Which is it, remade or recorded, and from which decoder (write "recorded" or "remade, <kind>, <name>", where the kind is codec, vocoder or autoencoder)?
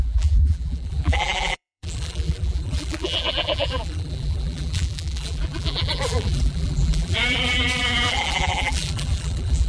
remade, vocoder, BigVGAN v2